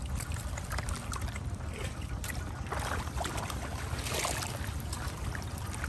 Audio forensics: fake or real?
real